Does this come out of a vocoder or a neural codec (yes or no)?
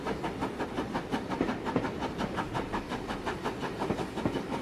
no